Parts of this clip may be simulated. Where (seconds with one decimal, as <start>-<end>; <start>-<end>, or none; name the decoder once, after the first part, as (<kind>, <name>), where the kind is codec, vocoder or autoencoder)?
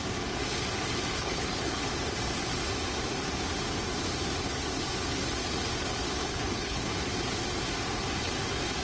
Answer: 1.1-1.8 (codec, HILCodec); 6.2-6.9